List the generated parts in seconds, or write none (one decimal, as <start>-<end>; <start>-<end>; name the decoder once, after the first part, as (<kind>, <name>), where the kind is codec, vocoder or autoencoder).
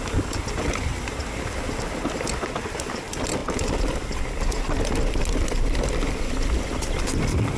none